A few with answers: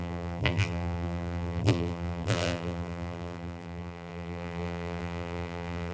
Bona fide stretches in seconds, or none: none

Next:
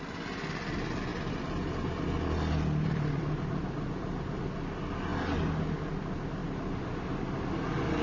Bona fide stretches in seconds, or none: 0.0-1.1; 4.4-6.4; 7.0-8.0

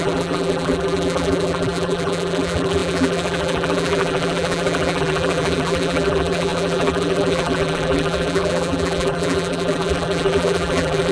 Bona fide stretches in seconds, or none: none

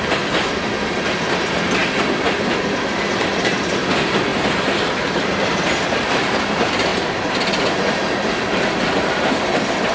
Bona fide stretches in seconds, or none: 0.0-4.3; 6.4-6.9; 7.9-9.9

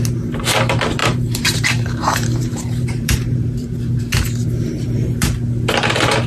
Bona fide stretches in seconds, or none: 0.0-1.0; 4.0-4.4; 5.3-6.3

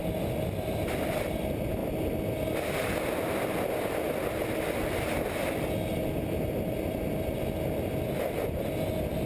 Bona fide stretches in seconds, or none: 0.0-9.3

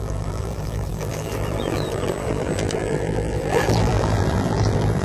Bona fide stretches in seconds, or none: none